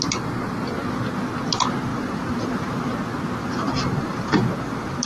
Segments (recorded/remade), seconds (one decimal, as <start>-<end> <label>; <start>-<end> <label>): 0.0-1.9 recorded; 1.9-2.9 remade; 2.9-3.4 recorded; 3.4-5.1 remade